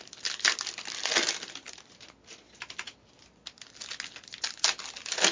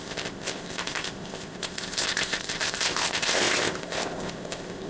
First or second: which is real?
first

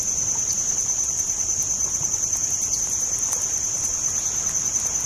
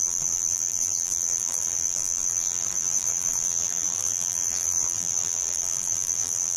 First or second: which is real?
first